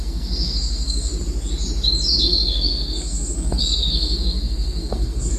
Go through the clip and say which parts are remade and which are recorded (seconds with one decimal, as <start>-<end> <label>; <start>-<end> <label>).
0.0-1.1 remade; 1.1-2.2 recorded; 2.2-5.4 remade